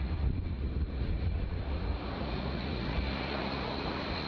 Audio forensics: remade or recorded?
remade